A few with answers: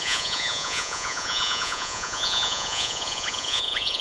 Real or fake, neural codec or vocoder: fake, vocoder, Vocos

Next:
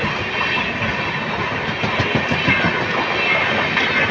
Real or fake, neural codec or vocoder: real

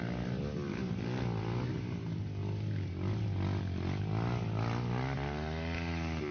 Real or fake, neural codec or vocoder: real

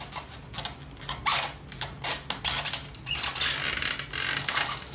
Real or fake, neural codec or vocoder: real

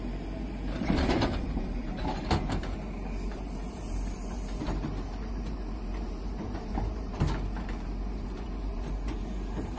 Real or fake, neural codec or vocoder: fake, vocoder, BigVGAN v2